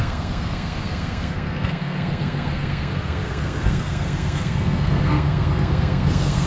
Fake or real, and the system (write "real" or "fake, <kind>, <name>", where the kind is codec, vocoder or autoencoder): fake, codec, SNAC